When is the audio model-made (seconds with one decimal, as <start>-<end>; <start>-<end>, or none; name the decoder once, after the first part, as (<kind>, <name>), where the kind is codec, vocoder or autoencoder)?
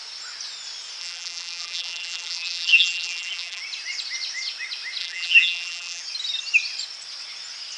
1.0-3.6 (vocoder, BigVGAN v2); 5.0-6.0